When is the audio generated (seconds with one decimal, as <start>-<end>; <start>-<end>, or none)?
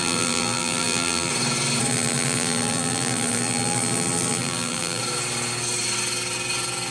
0.0-1.3; 1.9-5.0